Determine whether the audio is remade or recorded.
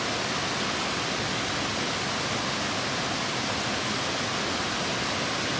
recorded